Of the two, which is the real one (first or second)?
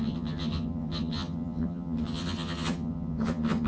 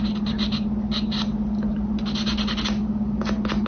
second